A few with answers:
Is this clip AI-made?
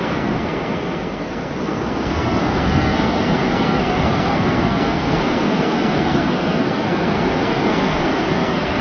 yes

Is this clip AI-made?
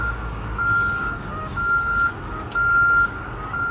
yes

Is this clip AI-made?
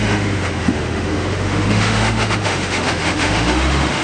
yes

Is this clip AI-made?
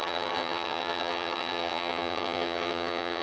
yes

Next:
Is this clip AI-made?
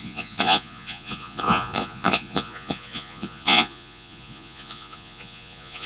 yes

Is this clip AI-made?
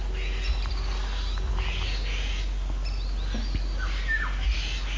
no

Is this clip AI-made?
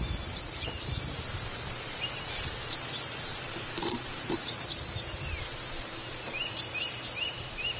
yes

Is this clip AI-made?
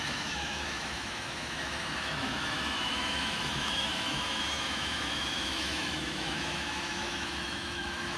yes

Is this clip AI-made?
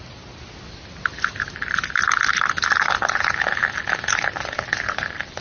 no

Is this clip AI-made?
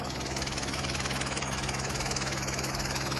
yes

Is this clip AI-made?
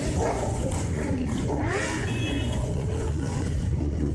yes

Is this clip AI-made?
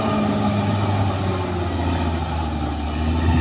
no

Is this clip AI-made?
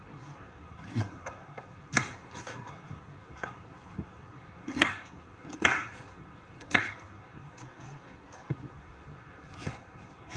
yes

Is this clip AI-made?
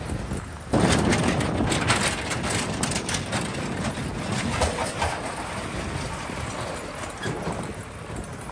no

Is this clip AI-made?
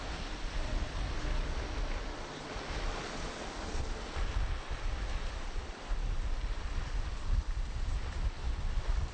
no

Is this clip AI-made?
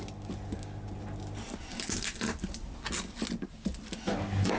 no